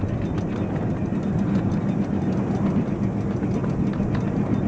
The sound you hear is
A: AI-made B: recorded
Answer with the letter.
B